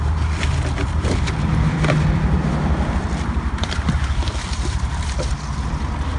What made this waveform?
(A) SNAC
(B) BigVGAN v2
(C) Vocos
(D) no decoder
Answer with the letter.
B